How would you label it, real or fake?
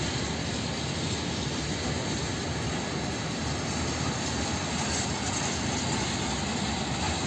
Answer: real